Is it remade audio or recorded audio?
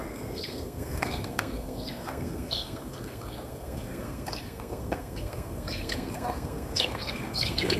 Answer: remade